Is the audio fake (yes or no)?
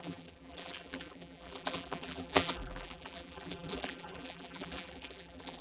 yes